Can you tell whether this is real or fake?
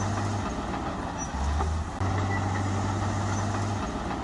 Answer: real